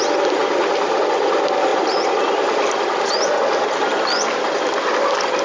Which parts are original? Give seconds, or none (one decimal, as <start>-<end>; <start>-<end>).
0.0-5.4

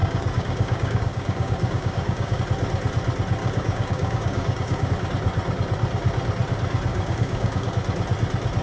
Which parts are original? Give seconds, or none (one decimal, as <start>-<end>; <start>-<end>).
2.4-3.4; 4.9-6.9; 7.7-8.6

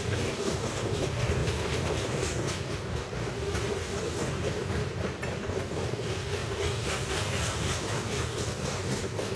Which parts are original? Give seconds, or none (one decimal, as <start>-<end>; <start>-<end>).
4.8-5.4

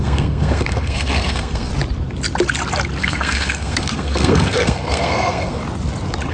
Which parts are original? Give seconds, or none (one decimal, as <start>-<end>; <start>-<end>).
1.7-3.0; 5.6-6.3

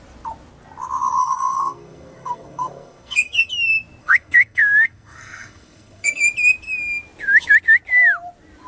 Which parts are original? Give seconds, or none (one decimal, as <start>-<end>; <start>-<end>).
0.0-1.2; 3.5-4.0; 6.2-8.7

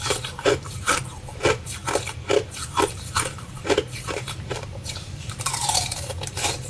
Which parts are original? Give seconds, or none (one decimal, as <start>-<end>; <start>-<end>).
1.8-2.5

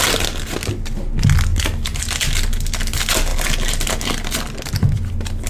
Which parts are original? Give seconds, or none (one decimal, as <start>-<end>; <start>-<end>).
0.0-1.5; 2.0-5.5